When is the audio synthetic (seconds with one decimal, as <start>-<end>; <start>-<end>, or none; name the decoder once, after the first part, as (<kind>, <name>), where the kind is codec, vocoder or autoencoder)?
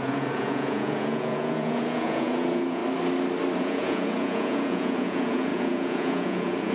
0.0-2.8 (vocoder, Vocos); 3.6-6.7